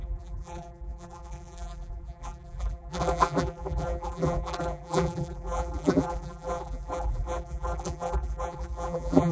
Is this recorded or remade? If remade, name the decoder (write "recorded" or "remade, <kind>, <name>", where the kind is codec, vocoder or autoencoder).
remade, vocoder, BigVGAN v2